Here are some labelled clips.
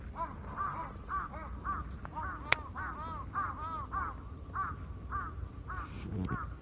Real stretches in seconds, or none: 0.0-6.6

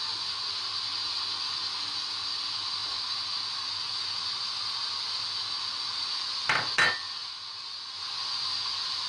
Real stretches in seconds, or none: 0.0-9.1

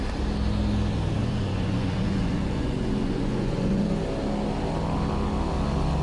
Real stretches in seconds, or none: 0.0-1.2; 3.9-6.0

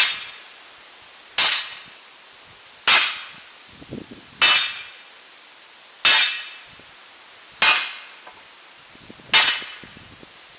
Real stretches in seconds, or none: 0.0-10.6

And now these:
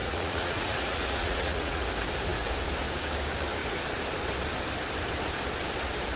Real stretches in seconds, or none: 1.8-6.2

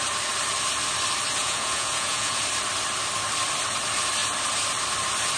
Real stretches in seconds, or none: 0.0-1.4; 2.4-5.4